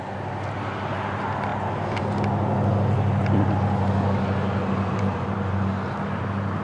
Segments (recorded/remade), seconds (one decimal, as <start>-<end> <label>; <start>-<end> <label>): 0.0-4.9 recorded; 4.9-6.6 remade